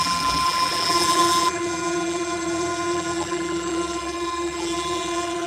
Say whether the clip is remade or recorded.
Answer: remade